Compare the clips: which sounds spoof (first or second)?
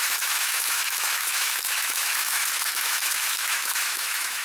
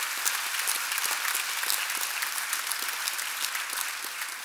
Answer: first